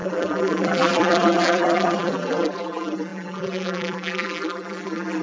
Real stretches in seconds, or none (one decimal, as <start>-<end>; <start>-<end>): none

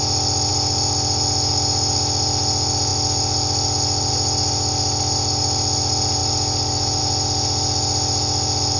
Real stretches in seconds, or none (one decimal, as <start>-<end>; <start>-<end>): 0.0-8.8

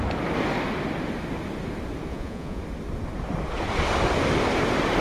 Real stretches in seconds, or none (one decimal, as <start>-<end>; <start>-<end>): 0.0-2.1; 2.6-5.0

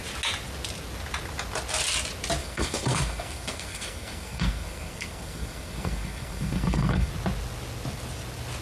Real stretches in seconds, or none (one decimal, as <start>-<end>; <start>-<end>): 0.0-2.4; 7.1-8.6

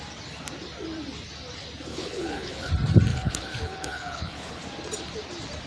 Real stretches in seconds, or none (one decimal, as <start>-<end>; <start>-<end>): 0.0-1.9; 2.7-3.1; 4.6-5.7